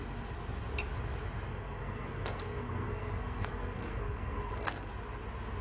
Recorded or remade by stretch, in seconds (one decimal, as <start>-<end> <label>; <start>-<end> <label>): 0.0-1.5 recorded; 1.5-4.9 remade; 4.9-5.6 recorded